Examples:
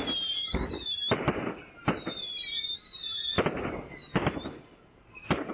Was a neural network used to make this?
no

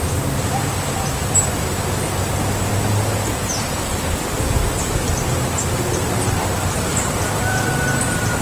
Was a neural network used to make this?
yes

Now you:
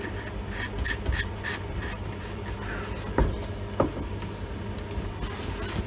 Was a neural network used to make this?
no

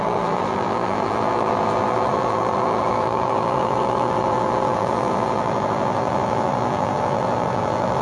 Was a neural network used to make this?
yes